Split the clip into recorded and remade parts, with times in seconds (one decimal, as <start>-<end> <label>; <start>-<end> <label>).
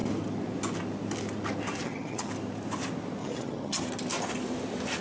0.0-1.8 recorded; 1.8-2.3 remade; 2.3-3.2 recorded; 3.2-3.8 remade; 3.8-5.0 recorded